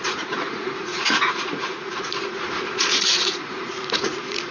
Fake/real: fake